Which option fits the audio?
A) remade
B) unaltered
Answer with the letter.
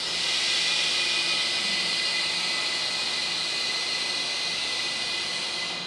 B